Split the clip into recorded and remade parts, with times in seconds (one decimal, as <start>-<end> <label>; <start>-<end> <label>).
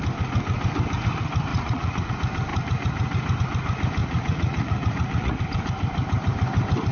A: 0.0-1.5 recorded; 1.5-2.1 remade; 2.1-4.0 recorded; 4.0-5.4 remade; 5.4-6.9 recorded